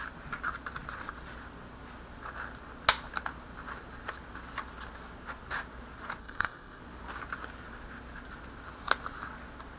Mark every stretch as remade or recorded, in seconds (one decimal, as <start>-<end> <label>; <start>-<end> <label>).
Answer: 0.0-6.2 recorded; 6.2-6.8 remade; 6.8-9.8 recorded